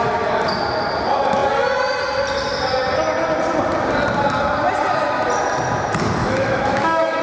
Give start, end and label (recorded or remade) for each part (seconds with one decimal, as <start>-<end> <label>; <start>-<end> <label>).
0.0-6.2 recorded; 6.2-7.2 remade